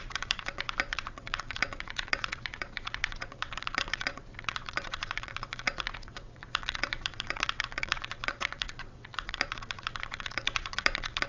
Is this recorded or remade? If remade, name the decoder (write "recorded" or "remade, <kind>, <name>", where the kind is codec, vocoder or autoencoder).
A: remade, vocoder, WaveNeXt